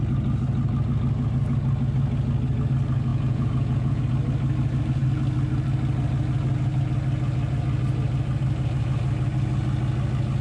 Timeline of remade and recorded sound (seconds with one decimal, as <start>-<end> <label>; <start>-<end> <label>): 0.0-3.1 recorded; 3.1-4.0 remade; 4.0-10.4 recorded